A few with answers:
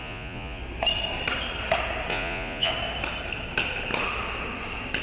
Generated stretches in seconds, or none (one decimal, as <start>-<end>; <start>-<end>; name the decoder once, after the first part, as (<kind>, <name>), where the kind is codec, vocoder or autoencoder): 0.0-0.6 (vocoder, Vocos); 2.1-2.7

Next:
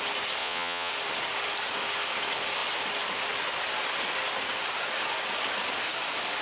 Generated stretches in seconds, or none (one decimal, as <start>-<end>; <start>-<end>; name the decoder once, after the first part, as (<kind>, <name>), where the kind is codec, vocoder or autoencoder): 0.4-0.9 (vocoder, Vocos)

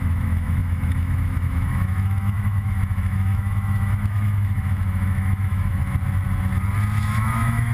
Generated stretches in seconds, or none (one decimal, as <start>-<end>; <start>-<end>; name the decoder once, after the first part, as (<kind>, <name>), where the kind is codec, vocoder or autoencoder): 0.0-5.8 (autoencoder, DAC-VAE); 7.0-7.7

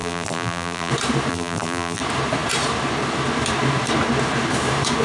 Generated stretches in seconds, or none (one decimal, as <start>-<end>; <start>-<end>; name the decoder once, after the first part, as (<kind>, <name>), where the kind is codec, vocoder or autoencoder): 0.0-0.9 (vocoder, BigVGAN v2); 1.3-2.0

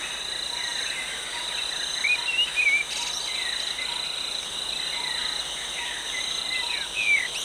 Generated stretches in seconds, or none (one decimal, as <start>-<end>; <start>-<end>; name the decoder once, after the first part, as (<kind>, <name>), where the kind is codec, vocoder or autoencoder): none